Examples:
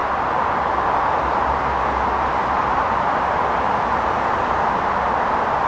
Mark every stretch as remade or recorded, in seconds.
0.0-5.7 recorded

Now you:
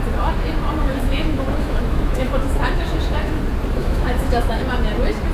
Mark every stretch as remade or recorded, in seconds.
0.0-0.9 recorded; 0.9-3.4 remade; 3.4-3.8 recorded; 3.8-4.6 remade; 4.6-5.3 recorded

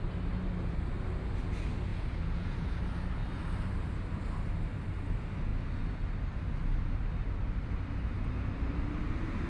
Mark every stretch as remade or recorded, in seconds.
0.0-1.9 recorded; 1.9-2.8 remade; 2.8-9.5 recorded

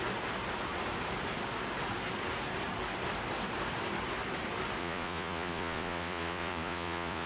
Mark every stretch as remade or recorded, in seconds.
0.0-4.8 recorded; 4.8-7.3 remade

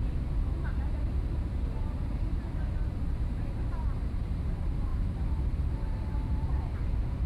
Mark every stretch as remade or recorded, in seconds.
0.0-7.3 remade